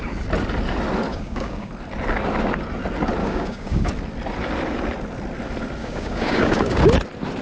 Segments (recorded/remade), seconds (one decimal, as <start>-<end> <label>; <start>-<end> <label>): 0.0-1.1 recorded; 1.1-1.7 remade; 1.7-3.2 recorded; 3.2-3.9 remade; 3.9-5.8 recorded; 5.8-6.8 remade; 6.8-7.4 recorded